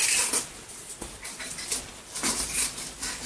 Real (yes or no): yes